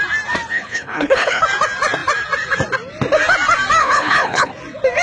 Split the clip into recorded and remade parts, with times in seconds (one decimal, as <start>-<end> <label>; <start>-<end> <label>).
0.0-0.5 recorded; 0.5-1.4 remade; 1.4-3.8 recorded; 3.8-4.5 remade; 4.5-5.0 recorded